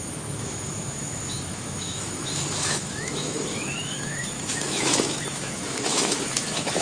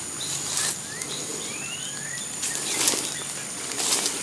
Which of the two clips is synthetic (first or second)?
first